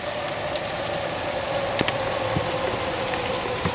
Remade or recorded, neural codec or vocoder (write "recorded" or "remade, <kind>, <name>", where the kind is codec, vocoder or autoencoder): recorded